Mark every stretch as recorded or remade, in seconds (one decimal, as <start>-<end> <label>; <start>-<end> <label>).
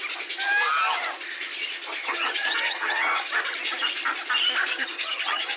0.0-2.0 recorded; 2.0-3.3 remade; 3.3-4.7 recorded; 4.7-5.6 remade